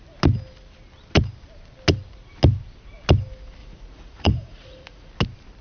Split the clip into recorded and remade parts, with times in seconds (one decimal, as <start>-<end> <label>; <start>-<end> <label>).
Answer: 0.0-3.6 recorded; 3.6-5.1 remade; 5.1-5.6 recorded